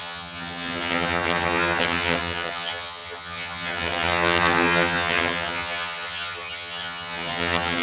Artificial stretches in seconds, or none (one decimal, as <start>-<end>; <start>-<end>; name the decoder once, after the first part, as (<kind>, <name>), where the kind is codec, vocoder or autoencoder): 0.0-7.8 (vocoder, HiFi-GAN)